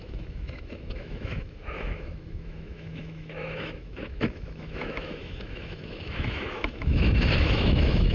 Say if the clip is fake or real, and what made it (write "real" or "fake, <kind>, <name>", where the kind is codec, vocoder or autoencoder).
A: fake, autoencoder, DAC-VAE